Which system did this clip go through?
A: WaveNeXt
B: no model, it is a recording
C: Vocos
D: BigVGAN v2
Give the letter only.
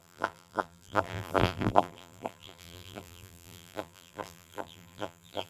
D